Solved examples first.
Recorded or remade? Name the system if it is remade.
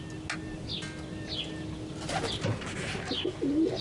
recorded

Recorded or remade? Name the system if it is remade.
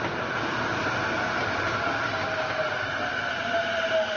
recorded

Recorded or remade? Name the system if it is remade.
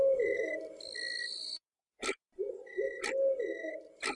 recorded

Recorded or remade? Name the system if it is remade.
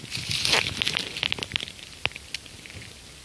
recorded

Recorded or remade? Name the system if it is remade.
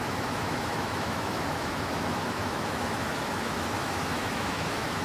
remade, autoencoder, DAC-VAE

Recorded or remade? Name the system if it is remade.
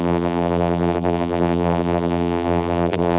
remade, vocoder, BigVGAN v2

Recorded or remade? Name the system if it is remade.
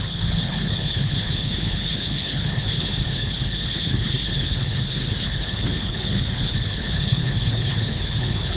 remade, codec, HILCodec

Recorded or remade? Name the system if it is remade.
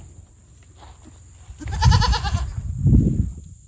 recorded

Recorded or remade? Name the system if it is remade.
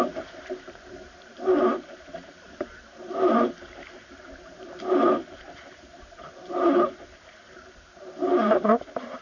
remade, vocoder, BigVGAN v2